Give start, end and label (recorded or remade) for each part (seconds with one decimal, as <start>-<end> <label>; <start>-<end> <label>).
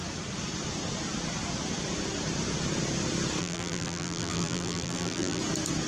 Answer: 0.0-3.4 recorded; 3.4-5.4 remade; 5.4-5.9 recorded